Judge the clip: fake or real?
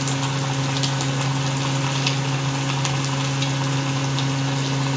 real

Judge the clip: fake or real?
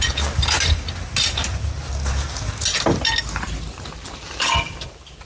real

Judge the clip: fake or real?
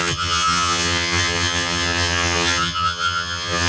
fake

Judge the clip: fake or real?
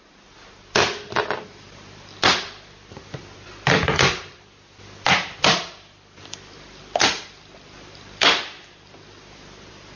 real